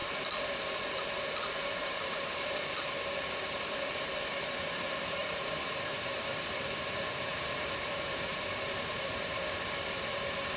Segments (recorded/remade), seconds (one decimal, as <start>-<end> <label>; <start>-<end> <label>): 0.0-10.6 remade